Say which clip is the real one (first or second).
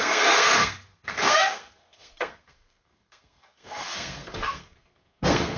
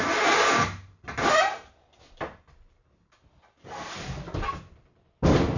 second